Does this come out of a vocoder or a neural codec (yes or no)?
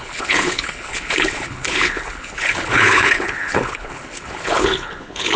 yes